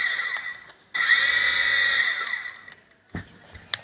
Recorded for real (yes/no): yes